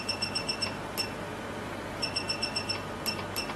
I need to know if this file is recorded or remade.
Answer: recorded